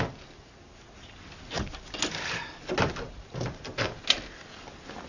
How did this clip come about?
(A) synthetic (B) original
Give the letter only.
B